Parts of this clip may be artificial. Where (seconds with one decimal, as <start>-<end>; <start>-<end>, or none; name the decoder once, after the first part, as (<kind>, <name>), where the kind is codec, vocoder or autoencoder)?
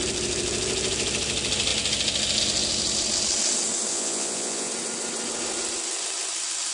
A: 3.9-4.7 (vocoder, Vocos)